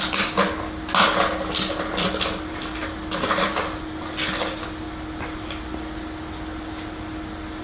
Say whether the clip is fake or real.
real